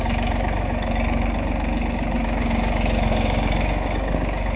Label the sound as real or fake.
fake